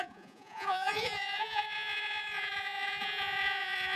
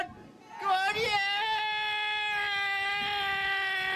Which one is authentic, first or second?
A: second